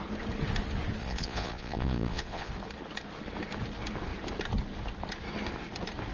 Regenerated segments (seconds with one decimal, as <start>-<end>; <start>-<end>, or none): 1.0-2.5